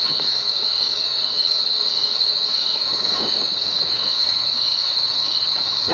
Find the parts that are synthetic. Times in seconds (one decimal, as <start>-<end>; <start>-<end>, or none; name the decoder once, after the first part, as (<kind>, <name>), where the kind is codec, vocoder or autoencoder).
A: 0.0-5.9 (codec, DAC)